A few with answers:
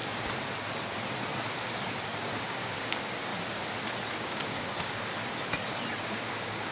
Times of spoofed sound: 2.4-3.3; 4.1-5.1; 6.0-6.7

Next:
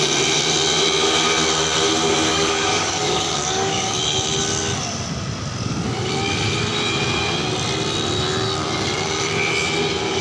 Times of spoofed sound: 2.3-4.0

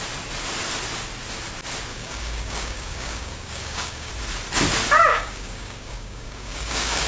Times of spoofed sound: 1.9-4.1; 5.1-7.1

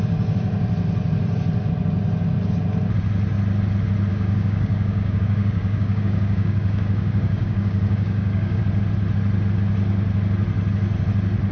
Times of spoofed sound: 4.1-8.6

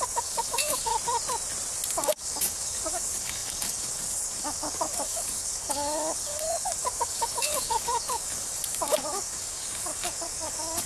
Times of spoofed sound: 0.0-0.9; 1.9-10.9

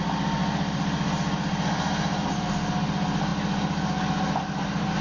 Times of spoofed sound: none